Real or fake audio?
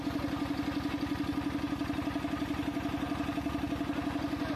real